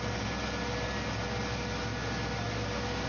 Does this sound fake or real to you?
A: real